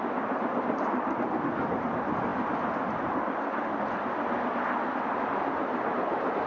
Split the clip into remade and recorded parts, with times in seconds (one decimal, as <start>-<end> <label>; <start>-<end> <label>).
0.0-6.5 recorded